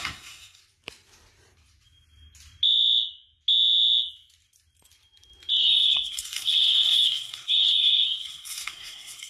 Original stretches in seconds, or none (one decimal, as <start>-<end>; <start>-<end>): 0.6-5.6